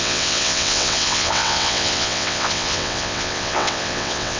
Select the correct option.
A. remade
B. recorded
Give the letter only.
A